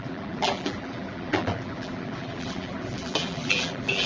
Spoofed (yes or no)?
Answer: yes